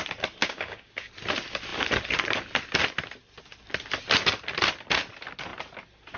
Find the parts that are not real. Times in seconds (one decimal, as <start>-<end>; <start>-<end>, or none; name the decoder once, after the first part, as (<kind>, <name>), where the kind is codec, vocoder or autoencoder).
0.4-1.1 (codec, DAC)